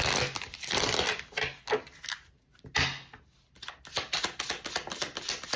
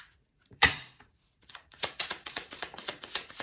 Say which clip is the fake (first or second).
second